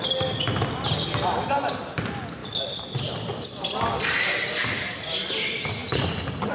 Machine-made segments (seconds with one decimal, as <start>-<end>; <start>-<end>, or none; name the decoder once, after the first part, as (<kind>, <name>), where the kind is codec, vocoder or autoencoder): none